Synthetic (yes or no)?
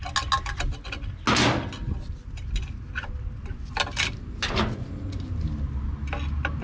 no